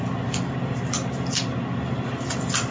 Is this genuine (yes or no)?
yes